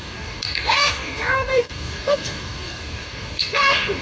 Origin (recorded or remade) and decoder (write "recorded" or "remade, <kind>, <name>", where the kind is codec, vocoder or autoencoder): remade, codec, DAC